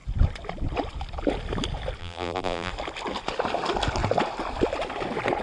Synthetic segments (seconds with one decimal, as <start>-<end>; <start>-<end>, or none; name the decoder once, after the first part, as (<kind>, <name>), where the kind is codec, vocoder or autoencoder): 2.0-2.7 (vocoder, BigVGAN v2)